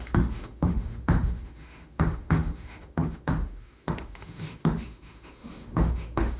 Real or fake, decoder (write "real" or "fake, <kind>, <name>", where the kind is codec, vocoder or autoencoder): fake, autoencoder, DAC-VAE